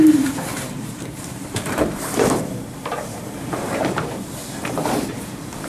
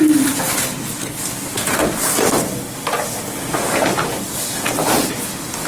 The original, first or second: second